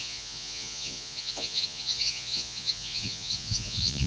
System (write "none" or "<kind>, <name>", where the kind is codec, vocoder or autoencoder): vocoder, Vocos